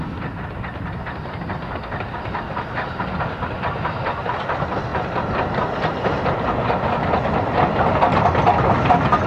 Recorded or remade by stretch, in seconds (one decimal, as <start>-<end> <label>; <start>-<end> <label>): 0.0-9.3 recorded